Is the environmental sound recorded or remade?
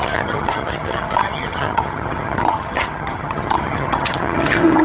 remade